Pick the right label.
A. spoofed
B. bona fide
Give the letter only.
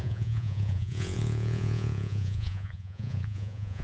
A